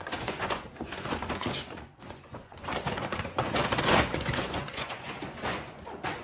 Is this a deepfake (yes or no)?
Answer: yes